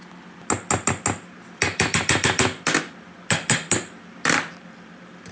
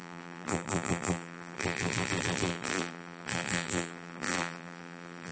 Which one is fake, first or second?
second